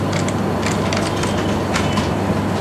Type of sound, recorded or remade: recorded